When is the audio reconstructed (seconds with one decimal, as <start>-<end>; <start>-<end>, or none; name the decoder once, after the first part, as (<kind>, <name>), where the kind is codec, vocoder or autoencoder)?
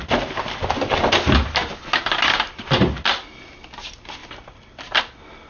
none